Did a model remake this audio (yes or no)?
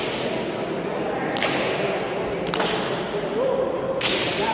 no